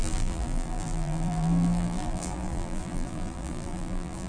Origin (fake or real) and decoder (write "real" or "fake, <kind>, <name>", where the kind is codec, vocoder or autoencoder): fake, vocoder, BigVGAN v2